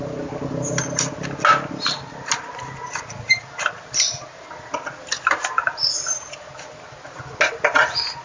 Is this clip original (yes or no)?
yes